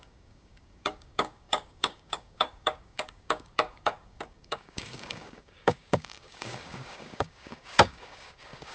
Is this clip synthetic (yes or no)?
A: yes